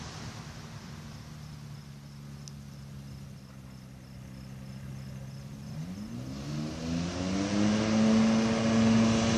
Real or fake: real